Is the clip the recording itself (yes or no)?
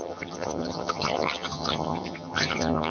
no